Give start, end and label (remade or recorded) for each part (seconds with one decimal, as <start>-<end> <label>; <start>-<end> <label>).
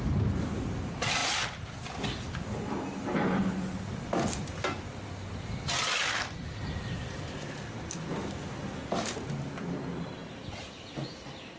0.0-11.6 recorded